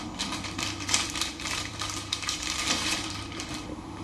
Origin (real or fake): fake